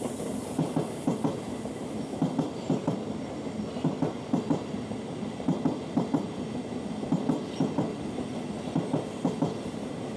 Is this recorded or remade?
recorded